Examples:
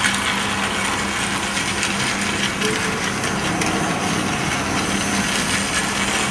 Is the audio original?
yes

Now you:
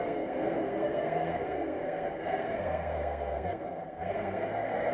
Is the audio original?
no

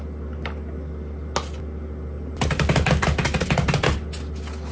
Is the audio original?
yes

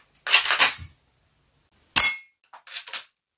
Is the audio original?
yes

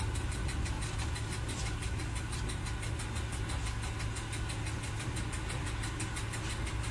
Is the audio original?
yes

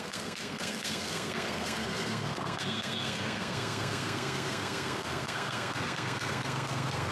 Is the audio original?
no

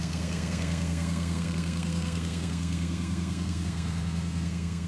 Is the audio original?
no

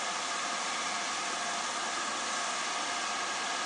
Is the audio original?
yes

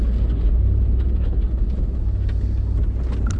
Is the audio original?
yes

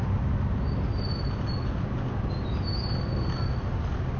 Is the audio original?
yes